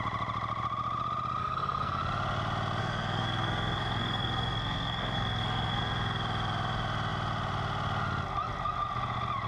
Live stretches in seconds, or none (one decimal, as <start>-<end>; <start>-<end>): 0.0-1.4; 2.0-2.8; 5.8-9.5